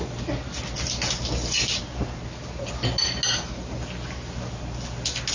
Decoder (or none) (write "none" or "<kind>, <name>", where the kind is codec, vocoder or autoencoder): none